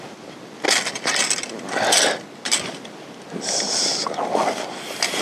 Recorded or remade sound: recorded